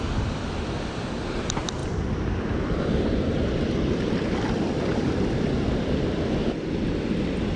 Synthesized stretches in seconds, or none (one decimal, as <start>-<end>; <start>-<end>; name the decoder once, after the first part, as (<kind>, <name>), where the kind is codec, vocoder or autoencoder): 0.0-7.6 (vocoder, BigVGAN v2)